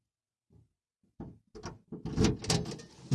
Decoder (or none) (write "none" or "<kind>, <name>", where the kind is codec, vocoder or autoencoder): none